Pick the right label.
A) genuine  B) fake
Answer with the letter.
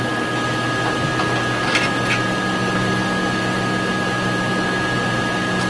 A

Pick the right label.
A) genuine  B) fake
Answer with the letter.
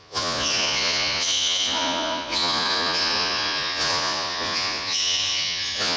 B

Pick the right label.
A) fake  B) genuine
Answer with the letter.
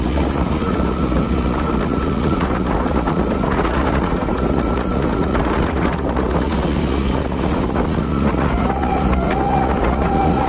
A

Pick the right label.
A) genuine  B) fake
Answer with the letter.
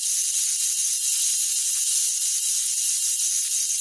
B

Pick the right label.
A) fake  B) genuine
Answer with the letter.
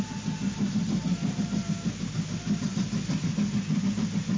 B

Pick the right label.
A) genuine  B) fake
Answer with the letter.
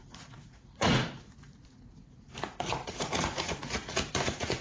B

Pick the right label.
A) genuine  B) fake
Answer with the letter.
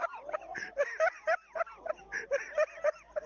A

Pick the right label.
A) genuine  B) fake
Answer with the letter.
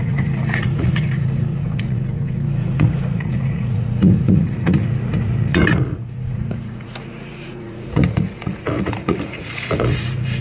B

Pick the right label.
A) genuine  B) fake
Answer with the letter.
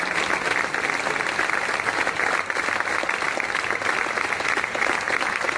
A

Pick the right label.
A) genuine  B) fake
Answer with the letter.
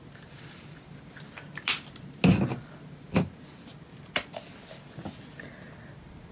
A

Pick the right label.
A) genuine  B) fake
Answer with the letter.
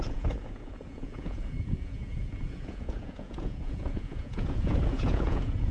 B